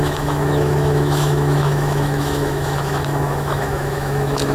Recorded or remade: remade